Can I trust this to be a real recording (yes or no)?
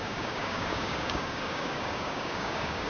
no